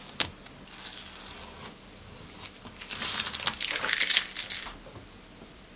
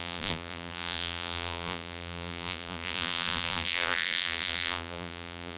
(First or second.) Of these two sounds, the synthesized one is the second